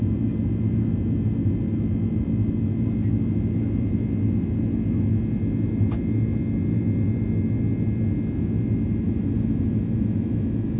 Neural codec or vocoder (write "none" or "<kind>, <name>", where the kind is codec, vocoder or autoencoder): none